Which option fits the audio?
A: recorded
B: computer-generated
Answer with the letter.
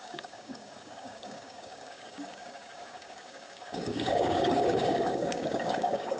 B